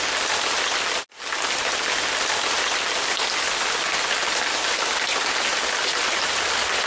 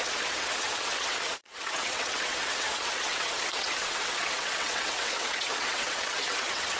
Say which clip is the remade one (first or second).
second